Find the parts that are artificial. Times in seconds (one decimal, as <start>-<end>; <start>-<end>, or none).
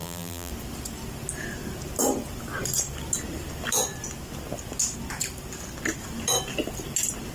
0.0-0.5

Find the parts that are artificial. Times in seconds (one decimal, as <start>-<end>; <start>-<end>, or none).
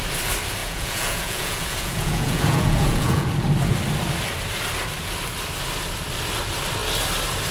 0.6-3.3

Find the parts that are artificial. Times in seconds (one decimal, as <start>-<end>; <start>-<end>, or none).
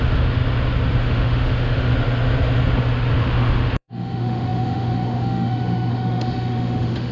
0.0-0.4; 1.0-1.9; 3.1-7.1